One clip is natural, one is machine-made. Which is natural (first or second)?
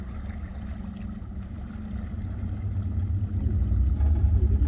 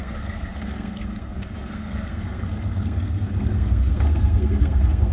first